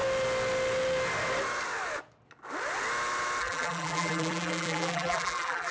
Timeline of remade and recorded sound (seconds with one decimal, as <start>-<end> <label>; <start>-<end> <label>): 0.0-3.4 recorded; 3.4-5.7 remade